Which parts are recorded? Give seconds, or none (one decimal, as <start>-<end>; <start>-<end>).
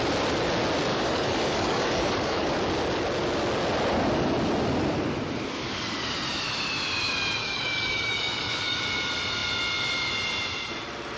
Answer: 0.0-0.9; 2.5-7.4; 8.8-11.2